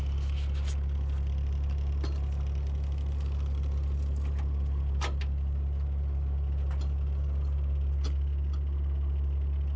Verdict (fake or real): real